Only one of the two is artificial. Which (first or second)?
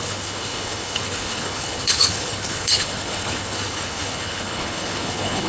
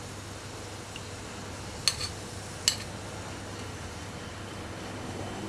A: first